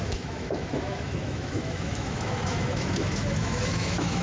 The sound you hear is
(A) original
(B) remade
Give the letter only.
B